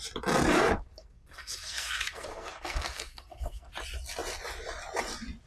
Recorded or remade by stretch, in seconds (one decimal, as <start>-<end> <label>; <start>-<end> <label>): 0.0-0.6 recorded; 0.6-3.7 remade; 3.7-5.5 recorded

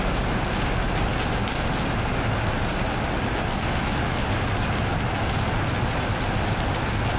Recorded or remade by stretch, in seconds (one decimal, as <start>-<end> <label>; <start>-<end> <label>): 0.0-7.2 recorded

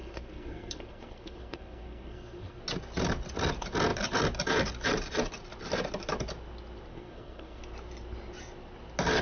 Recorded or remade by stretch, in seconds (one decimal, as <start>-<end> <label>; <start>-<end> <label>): 0.0-2.6 remade; 2.6-6.9 recorded; 6.9-7.6 remade; 7.6-9.2 recorded

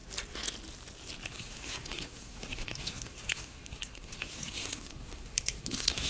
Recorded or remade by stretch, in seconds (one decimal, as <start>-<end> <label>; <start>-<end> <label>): 0.0-1.3 recorded; 1.3-6.1 remade

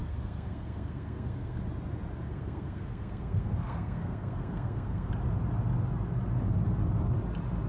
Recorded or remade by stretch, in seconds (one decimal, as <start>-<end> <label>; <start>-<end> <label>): 0.0-1.6 remade; 1.6-2.3 recorded; 2.3-5.1 remade; 5.1-7.7 recorded

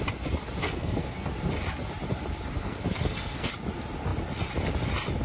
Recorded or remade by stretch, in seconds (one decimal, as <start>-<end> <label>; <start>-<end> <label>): 0.0-0.6 recorded; 0.6-1.3 remade; 1.3-2.6 recorded; 2.6-3.5 remade; 3.5-5.2 recorded